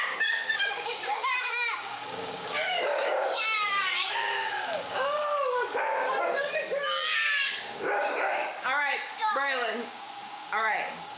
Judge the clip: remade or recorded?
remade